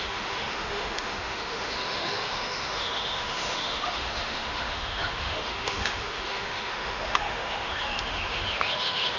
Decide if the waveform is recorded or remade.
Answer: remade